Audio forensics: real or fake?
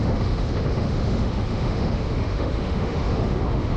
fake